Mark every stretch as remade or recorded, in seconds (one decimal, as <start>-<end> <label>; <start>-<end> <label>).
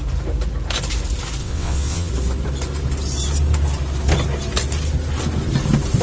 0.0-1.4 recorded; 1.4-2.1 remade; 2.1-6.0 recorded